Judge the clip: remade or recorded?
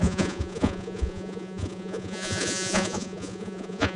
remade